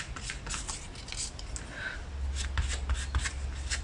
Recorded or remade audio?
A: recorded